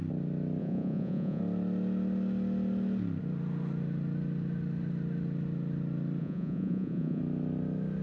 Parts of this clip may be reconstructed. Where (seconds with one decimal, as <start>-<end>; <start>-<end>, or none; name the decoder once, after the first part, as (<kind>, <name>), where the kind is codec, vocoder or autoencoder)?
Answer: 0.6-1.4 (vocoder, Vocos); 6.2-7.2